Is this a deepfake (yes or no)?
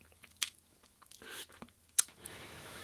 yes